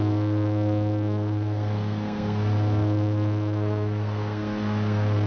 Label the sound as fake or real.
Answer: fake